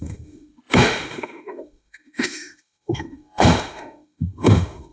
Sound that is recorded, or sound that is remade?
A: remade